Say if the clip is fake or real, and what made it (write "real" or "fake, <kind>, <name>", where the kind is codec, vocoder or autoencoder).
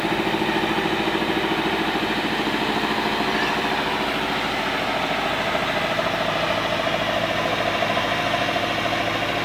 real